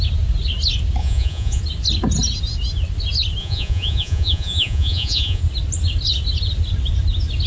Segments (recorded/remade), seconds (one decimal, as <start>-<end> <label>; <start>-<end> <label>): 0.0-1.0 recorded; 1.0-1.6 remade; 1.6-3.4 recorded; 3.4-5.4 remade; 5.4-7.5 recorded